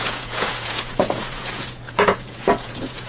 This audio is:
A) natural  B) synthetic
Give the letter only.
B